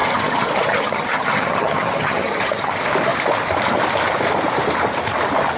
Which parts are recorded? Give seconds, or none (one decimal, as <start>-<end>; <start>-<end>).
2.7-5.6